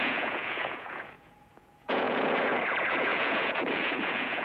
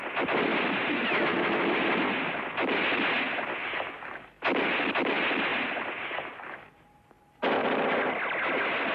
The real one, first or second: second